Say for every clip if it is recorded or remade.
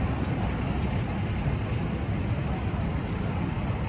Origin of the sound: recorded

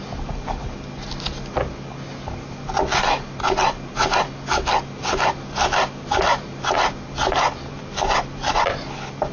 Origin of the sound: recorded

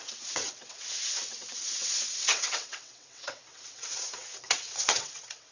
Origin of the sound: remade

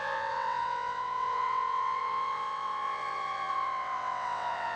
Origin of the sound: remade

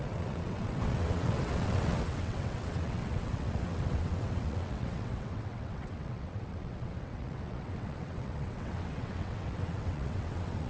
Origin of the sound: remade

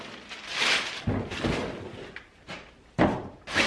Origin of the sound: recorded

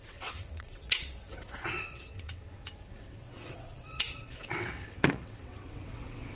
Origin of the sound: remade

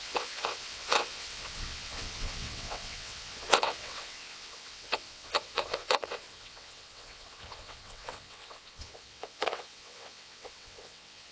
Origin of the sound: remade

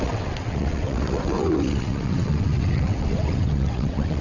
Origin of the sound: remade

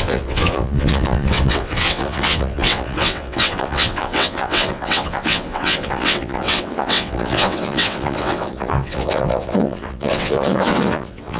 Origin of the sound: remade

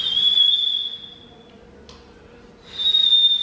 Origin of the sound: recorded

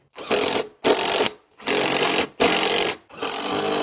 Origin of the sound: recorded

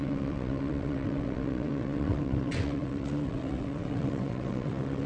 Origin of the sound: remade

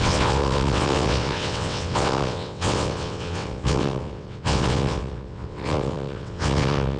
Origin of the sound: remade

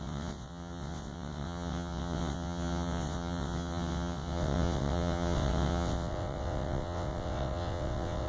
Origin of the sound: remade